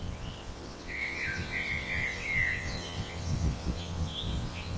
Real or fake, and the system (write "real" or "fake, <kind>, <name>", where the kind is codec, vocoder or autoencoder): fake, vocoder, WaveNeXt